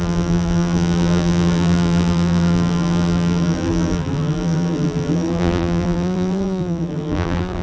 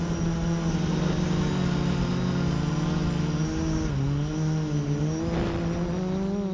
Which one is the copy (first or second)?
first